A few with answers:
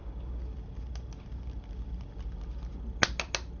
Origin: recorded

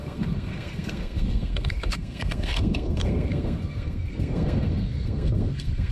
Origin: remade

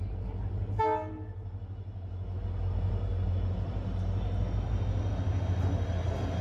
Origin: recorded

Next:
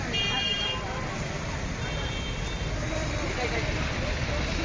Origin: recorded